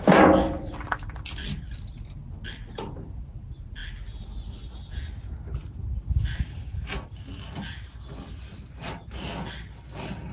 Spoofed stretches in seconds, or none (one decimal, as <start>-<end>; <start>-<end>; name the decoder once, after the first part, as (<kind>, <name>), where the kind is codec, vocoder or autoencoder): none